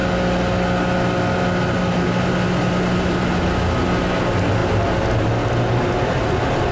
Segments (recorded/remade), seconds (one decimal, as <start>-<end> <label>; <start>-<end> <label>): 0.0-6.7 recorded